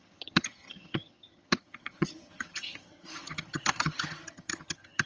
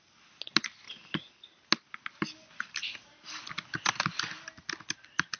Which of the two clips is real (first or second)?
second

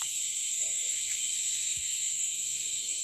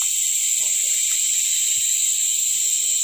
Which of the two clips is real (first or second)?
second